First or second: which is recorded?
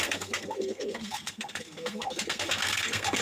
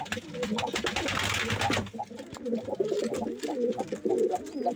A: second